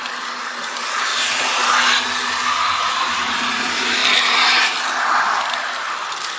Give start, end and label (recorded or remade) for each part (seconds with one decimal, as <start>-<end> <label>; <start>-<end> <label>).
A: 0.0-1.1 remade; 1.1-3.2 recorded; 3.2-4.0 remade; 4.0-6.4 recorded